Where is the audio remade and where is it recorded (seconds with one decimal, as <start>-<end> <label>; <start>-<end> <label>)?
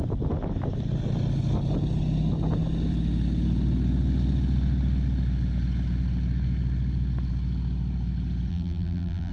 0.0-8.5 recorded; 8.5-9.3 remade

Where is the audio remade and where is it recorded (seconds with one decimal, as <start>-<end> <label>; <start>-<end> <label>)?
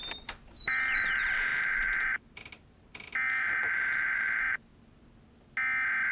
0.0-4.7 remade; 4.7-6.1 recorded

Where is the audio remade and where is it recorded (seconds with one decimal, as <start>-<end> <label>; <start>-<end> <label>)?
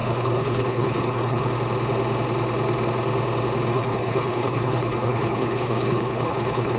0.0-1.5 remade; 1.5-3.7 recorded; 3.7-6.8 remade